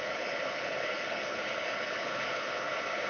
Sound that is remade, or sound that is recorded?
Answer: remade